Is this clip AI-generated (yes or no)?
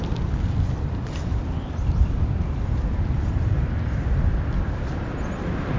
no